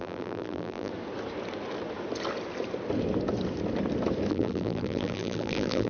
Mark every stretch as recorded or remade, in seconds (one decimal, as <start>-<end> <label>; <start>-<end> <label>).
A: 0.0-0.9 remade; 0.9-4.3 recorded; 4.3-5.9 remade